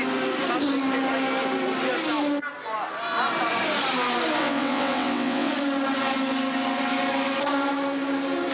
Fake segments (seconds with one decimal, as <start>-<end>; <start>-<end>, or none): 4.4-5.5